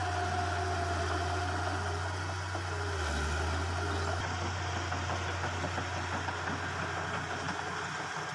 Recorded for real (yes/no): yes